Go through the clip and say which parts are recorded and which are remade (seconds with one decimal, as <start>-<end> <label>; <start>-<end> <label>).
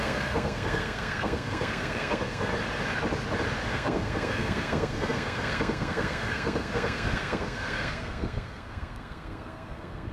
0.0-2.5 remade; 2.5-3.7 recorded; 3.7-10.1 remade